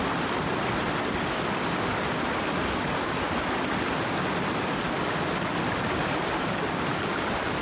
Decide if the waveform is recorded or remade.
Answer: recorded